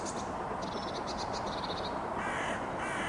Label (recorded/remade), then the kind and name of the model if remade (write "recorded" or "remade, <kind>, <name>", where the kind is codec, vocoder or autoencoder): recorded